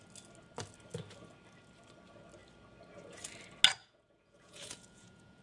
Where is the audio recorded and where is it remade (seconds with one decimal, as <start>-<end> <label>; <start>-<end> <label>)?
0.0-3.8 recorded; 3.8-5.4 remade

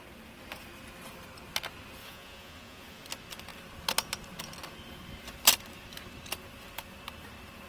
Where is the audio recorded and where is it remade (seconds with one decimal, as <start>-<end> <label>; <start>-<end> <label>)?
0.0-2.0 recorded; 2.0-3.0 remade; 3.0-7.7 recorded

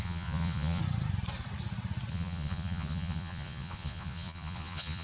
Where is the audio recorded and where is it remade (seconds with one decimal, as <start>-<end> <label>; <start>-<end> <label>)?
0.0-0.8 remade; 0.8-2.1 recorded; 2.1-5.0 remade

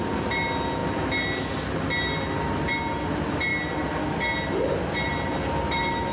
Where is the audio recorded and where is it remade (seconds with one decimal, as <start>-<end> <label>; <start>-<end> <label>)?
0.0-6.1 recorded